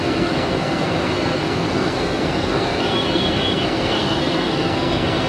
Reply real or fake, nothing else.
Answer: fake